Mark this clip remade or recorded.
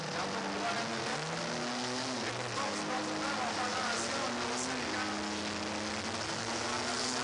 recorded